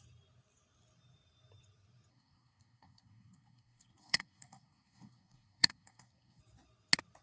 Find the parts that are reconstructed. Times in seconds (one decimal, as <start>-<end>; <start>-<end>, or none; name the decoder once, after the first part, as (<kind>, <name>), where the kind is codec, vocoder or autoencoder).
2.1-6.4 (codec, SNAC)